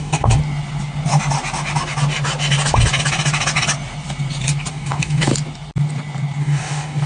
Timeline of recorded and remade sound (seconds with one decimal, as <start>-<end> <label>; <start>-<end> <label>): 0.0-0.4 remade; 0.4-4.7 recorded; 4.7-5.3 remade; 5.3-6.4 recorded; 6.4-7.1 remade